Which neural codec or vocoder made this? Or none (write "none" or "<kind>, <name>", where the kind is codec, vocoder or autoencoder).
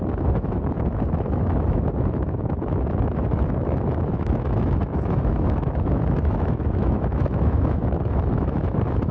autoencoder, DAC-VAE